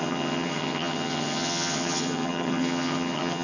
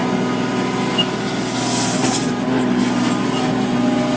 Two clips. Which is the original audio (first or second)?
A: second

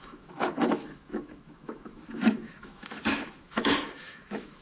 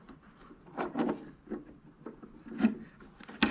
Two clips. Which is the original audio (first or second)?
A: second